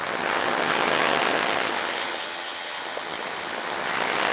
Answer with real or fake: fake